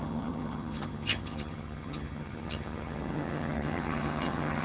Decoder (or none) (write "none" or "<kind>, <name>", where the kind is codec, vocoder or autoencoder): vocoder, HiFi-GAN